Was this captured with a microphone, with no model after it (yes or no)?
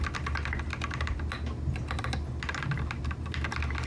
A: yes